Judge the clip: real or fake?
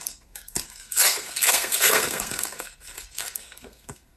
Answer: fake